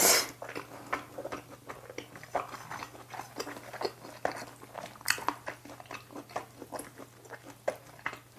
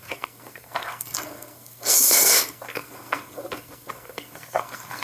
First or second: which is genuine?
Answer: first